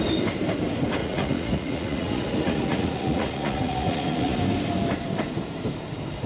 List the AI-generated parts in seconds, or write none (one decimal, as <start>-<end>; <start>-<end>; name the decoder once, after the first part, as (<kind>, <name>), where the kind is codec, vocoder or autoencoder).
1.0-4.4 (vocoder, Vocos)